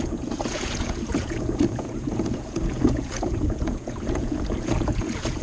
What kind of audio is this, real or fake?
fake